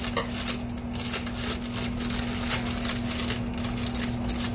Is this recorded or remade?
recorded